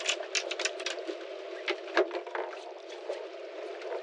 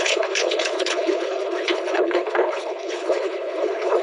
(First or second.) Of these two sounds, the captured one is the first